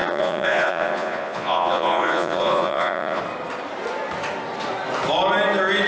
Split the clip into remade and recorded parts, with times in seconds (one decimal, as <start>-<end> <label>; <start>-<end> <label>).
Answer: 0.0-3.2 remade; 3.2-5.9 recorded

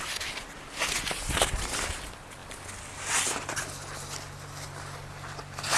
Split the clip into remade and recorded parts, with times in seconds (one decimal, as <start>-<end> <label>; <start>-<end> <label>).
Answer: 0.0-5.8 recorded